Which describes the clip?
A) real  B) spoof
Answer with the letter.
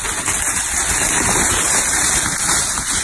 A